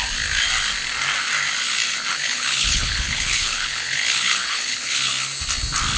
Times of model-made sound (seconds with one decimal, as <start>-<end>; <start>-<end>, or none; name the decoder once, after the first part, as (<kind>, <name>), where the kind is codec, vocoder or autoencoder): 2.1-5.1 (codec, HILCodec)